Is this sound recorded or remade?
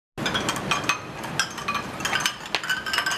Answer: recorded